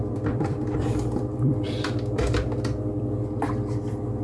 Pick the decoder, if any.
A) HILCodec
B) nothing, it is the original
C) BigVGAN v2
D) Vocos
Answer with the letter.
C